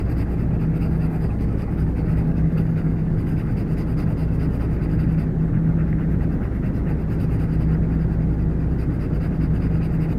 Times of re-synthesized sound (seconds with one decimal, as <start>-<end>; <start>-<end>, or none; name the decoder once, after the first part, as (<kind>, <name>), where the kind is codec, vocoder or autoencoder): 0.8-3.5 (codec, DAC)